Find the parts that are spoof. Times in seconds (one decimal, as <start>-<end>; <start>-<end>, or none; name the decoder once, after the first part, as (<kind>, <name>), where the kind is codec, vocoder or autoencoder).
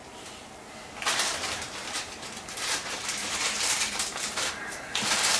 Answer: 1.3-4.5 (vocoder, BigVGAN v2)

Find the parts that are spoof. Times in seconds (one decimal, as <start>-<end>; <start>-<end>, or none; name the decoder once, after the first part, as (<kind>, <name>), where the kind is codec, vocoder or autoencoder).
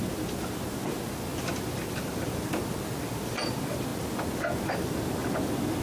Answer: none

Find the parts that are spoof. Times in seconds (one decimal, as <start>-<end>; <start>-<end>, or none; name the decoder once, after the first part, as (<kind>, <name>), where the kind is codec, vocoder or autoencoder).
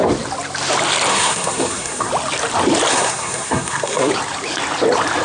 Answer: 1.1-2.1 (codec, SNAC); 2.9-4.1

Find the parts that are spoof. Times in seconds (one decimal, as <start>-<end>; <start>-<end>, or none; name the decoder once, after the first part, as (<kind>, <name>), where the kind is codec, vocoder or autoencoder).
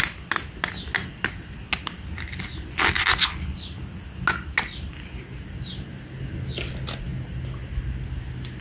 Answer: none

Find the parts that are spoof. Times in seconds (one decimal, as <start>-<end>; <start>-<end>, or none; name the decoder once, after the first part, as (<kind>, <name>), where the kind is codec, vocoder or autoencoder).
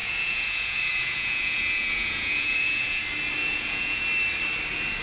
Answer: 0.0-3.0 (vocoder, Vocos); 3.4-4.0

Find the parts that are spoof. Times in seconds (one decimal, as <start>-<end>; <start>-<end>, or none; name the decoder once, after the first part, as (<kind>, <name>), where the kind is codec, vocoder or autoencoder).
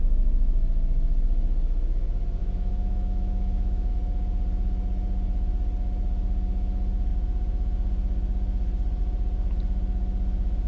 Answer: 2.4-3.9 (autoencoder, DAC-VAE)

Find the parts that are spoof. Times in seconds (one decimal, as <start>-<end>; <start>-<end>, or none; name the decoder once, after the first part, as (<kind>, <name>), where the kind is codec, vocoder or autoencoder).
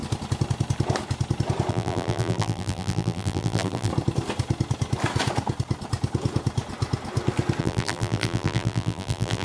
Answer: 1.7-3.9 (vocoder, BigVGAN v2); 7.6-9.4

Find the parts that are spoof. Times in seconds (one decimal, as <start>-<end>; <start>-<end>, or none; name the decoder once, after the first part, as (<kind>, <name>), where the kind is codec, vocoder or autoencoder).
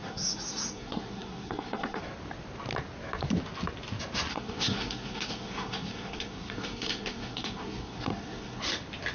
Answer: 0.0-2.0 (codec, SNAC); 4.3-8.6